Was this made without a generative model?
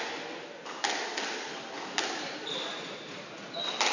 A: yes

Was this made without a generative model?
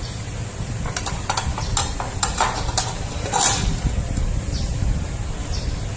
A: yes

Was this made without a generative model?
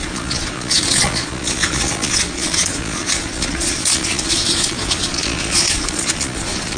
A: no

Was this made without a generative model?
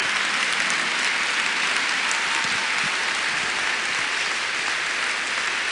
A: yes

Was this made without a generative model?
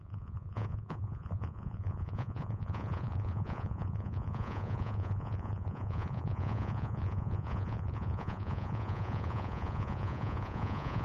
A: no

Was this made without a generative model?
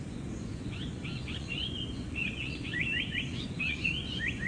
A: no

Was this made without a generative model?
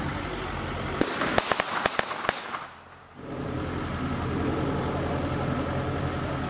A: yes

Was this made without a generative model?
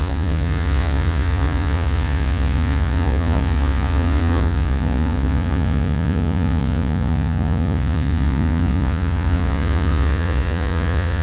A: no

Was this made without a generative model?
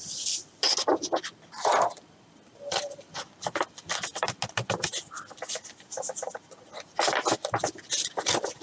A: yes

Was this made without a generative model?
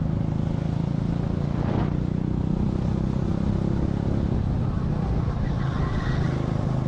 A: yes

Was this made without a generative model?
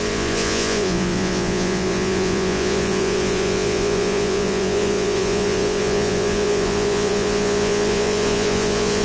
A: no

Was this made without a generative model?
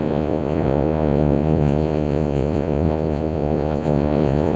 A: no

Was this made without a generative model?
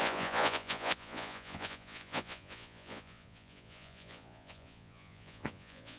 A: no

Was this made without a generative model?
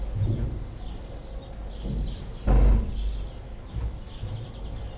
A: yes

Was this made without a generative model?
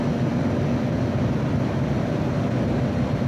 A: yes